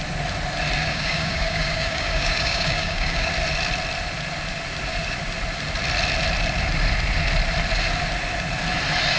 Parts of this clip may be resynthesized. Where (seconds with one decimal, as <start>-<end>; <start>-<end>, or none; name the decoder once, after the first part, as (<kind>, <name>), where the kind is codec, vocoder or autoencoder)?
0.8-3.3 (codec, DAC)